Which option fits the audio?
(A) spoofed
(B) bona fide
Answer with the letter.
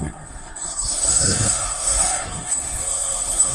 A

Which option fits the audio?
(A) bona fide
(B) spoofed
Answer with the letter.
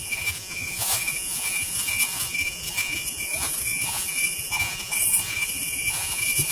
B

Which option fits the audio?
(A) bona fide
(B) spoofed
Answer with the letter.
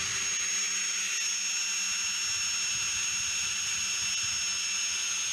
A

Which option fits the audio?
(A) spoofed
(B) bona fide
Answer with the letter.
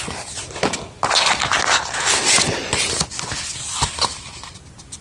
B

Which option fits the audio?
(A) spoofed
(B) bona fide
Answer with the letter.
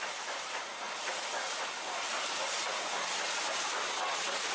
B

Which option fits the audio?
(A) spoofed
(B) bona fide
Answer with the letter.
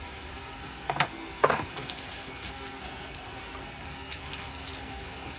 A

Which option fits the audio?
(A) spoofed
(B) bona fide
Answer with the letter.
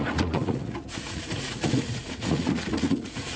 A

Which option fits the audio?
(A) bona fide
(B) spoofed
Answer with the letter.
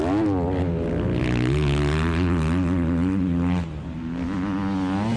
A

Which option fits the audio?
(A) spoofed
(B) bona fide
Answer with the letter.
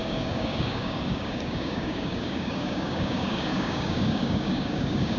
A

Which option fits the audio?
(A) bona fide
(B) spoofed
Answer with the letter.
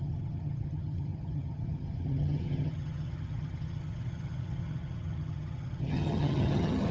B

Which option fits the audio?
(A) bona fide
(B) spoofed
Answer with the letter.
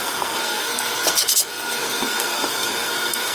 B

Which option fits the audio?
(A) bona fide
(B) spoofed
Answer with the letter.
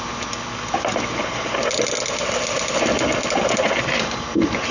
A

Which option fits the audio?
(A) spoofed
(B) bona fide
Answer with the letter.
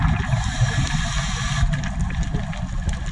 B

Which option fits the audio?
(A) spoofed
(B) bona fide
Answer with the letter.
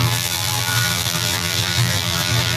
A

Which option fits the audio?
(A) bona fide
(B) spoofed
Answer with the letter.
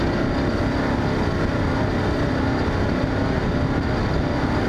A